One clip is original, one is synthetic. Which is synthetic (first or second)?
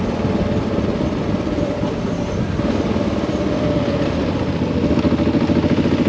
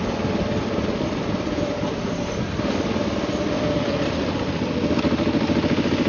second